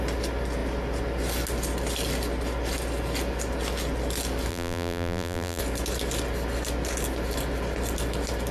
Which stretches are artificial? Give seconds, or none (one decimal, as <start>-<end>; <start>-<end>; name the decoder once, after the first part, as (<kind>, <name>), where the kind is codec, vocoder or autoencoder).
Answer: 4.5-5.6 (vocoder, BigVGAN v2)